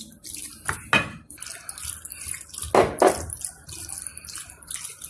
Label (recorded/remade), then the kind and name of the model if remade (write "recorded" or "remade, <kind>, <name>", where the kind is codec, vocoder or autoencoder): recorded